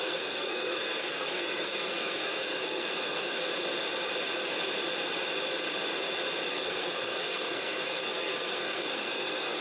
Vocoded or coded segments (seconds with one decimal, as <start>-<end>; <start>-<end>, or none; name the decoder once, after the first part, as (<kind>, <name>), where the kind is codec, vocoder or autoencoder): 0.0-3.4 (codec, SNAC); 6.5-9.6